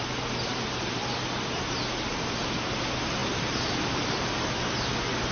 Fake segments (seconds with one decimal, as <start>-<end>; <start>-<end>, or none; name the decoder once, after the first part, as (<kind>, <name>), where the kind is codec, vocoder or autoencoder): 3.2-4.2 (vocoder, BigVGAN v2)